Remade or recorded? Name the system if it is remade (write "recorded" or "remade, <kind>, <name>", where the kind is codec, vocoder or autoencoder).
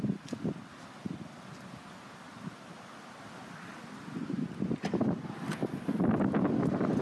recorded